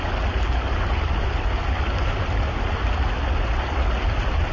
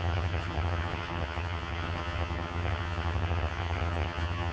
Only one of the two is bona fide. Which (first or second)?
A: first